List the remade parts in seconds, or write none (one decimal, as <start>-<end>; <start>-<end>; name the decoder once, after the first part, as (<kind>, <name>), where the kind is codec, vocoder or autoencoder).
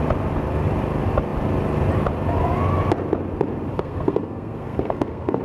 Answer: 3.7-5.4 (codec, SNAC)